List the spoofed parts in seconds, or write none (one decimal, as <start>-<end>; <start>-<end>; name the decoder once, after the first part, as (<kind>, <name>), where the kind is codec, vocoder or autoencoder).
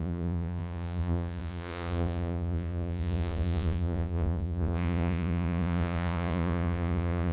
0.0-7.3 (vocoder, Vocos)